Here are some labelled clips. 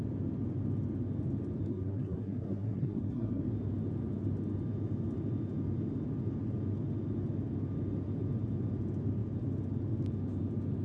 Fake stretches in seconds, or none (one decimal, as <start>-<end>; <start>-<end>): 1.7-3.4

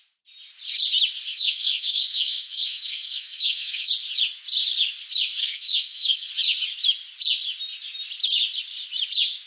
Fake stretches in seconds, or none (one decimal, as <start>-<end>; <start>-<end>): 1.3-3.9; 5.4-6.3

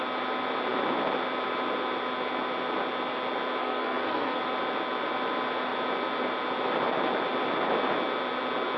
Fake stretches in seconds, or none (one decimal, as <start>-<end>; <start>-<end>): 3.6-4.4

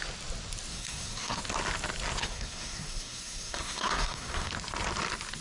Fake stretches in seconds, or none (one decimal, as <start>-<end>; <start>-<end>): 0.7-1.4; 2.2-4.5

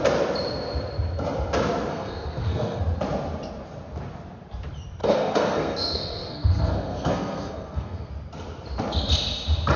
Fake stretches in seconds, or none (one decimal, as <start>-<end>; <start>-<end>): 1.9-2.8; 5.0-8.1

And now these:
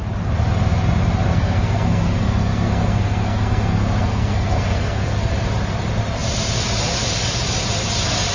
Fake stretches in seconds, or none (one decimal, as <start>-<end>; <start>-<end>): 1.3-5.3

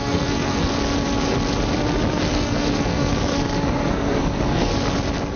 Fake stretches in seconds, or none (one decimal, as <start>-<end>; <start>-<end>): 0.0-0.7; 2.2-4.7

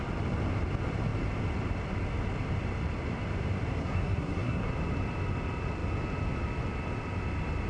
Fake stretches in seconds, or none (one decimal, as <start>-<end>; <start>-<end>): 3.8-4.7